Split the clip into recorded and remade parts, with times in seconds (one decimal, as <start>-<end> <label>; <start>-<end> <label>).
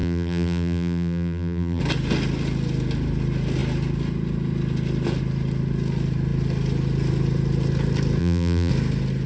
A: 0.0-1.8 remade; 1.8-8.2 recorded; 8.2-8.7 remade; 8.7-9.3 recorded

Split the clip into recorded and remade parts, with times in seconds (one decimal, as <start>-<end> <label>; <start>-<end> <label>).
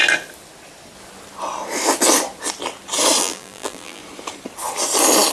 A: 0.0-3.2 recorded; 3.2-4.0 remade; 4.0-5.3 recorded